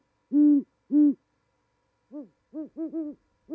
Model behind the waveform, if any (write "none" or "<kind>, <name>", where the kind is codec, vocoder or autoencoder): none